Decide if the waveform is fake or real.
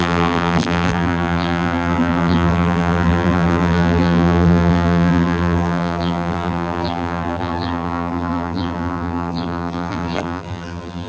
fake